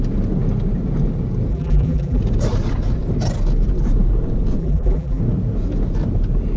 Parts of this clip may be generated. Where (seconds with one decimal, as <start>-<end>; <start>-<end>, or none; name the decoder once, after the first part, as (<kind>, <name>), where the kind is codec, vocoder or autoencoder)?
1.5-2.2 (vocoder, BigVGAN v2); 4.6-5.2